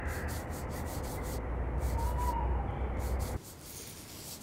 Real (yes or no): yes